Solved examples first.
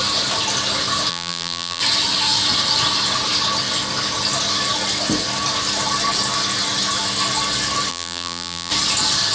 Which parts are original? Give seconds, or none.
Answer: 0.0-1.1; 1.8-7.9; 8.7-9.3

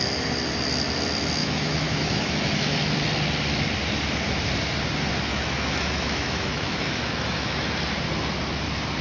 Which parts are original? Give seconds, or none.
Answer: 0.0-1.4; 2.8-5.3; 7.7-9.0